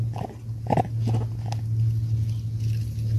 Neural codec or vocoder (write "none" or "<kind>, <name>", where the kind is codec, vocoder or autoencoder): none